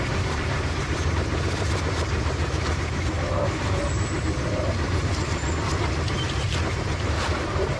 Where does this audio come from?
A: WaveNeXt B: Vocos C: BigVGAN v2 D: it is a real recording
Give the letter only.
C